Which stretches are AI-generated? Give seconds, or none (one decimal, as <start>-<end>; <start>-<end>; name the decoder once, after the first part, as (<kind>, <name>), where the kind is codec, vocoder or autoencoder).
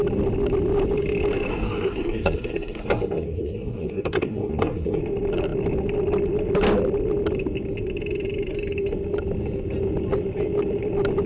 1.5-5.0 (codec, SNAC)